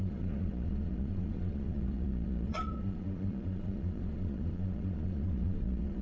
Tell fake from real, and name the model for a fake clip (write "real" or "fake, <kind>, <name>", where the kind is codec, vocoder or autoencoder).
fake, vocoder, Vocos